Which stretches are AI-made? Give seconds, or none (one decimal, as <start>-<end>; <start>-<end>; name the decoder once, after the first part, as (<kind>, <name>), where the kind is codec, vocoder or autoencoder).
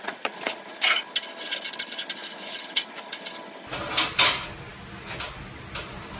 0.0-1.0 (vocoder, Vocos); 2.2-3.2